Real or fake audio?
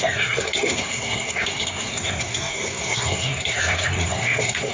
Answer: fake